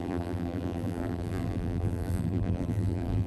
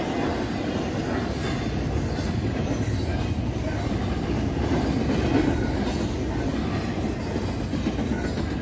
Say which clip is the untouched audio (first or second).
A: second